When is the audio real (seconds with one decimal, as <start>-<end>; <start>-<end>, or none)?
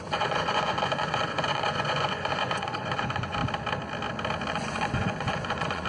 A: 3.4-4.5